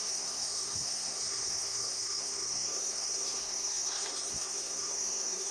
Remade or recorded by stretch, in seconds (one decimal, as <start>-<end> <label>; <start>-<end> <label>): 0.0-5.5 remade